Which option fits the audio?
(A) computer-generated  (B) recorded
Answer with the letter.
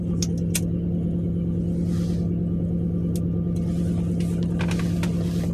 B